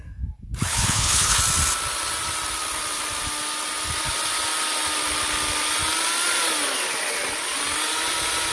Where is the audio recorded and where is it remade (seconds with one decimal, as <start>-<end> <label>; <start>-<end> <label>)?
0.0-0.7 recorded; 0.7-1.4 remade; 1.4-8.5 recorded